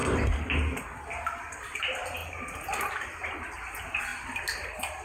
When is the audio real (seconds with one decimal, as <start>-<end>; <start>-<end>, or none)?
0.0-5.0